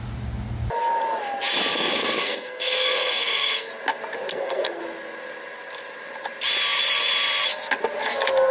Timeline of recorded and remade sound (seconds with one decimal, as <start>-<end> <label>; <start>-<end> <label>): 0.0-1.7 recorded; 1.7-3.7 remade; 3.7-4.3 recorded; 4.3-4.8 remade; 4.8-8.5 recorded

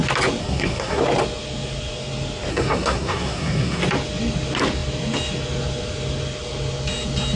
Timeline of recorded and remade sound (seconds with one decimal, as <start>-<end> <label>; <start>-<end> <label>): 0.0-0.4 recorded; 0.4-1.0 remade; 1.0-2.5 recorded; 2.5-3.8 remade; 3.8-7.4 recorded

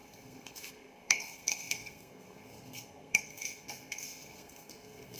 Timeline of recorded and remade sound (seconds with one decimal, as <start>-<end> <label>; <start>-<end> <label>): 0.0-5.2 remade

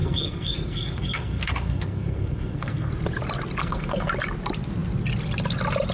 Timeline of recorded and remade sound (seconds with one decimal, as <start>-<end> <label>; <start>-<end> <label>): 0.0-2.9 remade; 2.9-3.6 recorded; 3.6-4.1 remade; 4.1-5.9 recorded